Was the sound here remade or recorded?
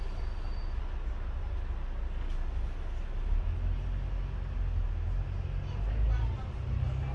recorded